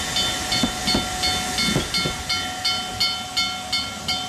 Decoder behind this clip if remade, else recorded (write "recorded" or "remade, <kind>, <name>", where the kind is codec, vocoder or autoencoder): recorded